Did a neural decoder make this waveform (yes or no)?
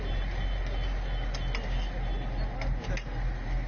no